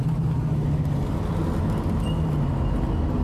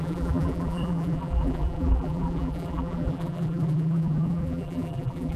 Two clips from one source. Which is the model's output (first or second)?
second